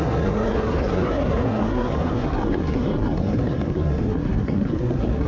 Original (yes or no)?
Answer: no